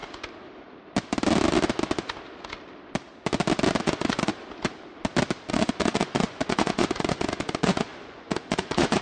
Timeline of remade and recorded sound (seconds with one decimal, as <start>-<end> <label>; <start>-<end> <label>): 0.0-3.8 recorded; 3.8-4.3 remade; 4.3-5.5 recorded; 5.5-9.0 remade